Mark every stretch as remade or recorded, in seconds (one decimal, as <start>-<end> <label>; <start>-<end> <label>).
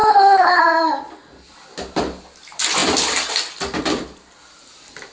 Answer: 0.0-0.6 remade; 0.6-5.1 recorded